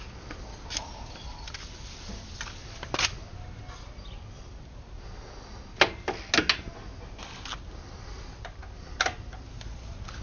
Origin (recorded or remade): recorded